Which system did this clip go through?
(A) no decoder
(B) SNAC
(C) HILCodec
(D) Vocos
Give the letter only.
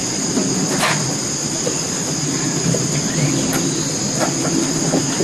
A